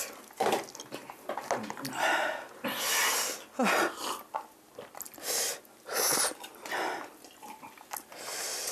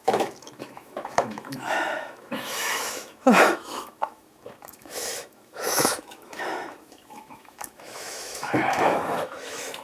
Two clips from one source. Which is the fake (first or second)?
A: second